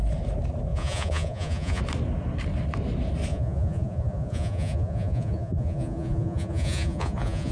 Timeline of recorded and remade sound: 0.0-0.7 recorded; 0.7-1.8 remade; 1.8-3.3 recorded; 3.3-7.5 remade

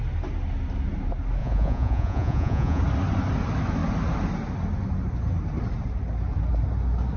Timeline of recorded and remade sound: 0.0-1.4 recorded; 1.4-2.8 remade; 2.8-7.2 recorded

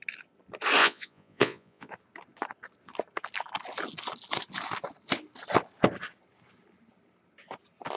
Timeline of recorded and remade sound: 0.0-0.8 recorded; 0.8-1.9 remade; 1.9-8.0 recorded

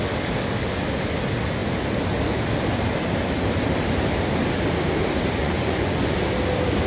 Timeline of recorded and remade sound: 0.0-5.4 recorded; 5.4-6.2 remade; 6.2-6.9 recorded

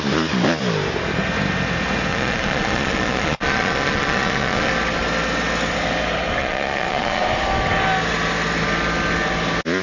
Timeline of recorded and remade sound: 0.0-2.1 recorded; 2.1-4.7 remade; 4.7-6.4 recorded; 6.4-7.2 remade; 7.2-9.8 recorded

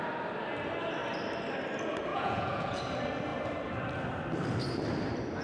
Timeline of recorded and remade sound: 0.0-2.1 recorded; 2.1-2.8 remade; 2.8-5.4 recorded